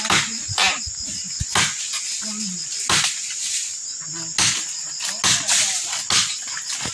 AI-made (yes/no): no